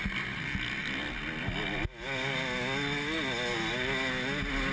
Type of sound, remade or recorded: recorded